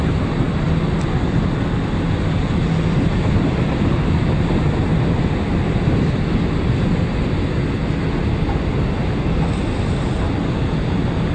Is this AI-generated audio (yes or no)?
no